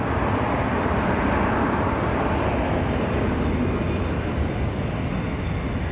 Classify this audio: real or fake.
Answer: real